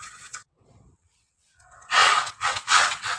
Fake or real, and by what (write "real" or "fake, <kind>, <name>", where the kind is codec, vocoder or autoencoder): fake, vocoder, WaveNeXt